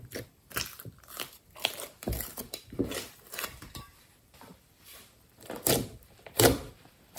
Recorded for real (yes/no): no